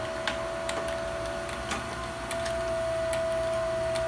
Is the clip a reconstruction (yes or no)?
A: no